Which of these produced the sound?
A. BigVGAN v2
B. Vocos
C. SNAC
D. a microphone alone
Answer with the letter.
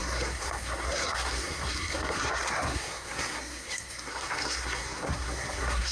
C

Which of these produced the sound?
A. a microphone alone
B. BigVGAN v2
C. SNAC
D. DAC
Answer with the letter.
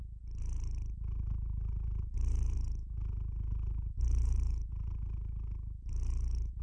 A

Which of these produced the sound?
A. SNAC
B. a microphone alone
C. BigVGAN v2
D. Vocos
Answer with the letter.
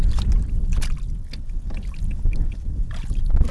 B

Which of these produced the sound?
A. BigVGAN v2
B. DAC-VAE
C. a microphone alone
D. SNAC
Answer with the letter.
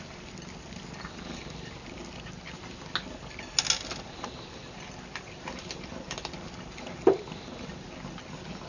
C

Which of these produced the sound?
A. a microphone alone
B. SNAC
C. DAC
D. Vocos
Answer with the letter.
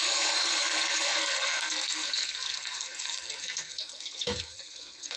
B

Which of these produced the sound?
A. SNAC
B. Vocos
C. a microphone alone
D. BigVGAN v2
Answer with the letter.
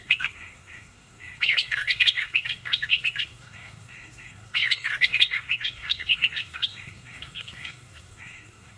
A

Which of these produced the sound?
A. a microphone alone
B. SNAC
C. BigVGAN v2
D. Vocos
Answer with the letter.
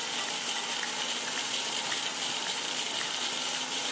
A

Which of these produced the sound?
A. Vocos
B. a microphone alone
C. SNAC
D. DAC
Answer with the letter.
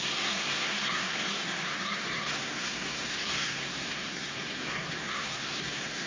C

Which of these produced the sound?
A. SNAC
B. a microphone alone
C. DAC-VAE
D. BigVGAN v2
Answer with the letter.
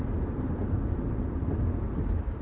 B